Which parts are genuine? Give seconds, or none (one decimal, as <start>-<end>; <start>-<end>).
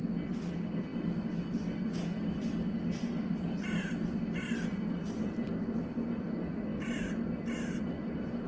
0.0-8.5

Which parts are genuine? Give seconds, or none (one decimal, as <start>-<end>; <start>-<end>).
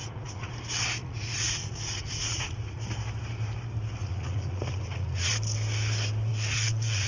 0.5-1.0; 2.8-4.0; 5.3-6.3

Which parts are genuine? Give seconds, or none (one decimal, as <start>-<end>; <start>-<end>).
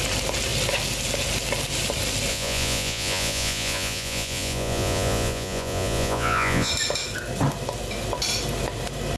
0.0-2.3; 6.7-9.2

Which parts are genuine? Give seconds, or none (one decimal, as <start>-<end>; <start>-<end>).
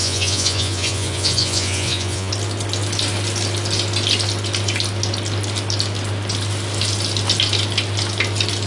2.3-8.7